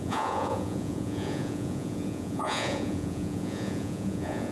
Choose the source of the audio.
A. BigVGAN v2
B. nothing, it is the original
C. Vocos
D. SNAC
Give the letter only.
C